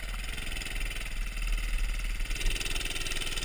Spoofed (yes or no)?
no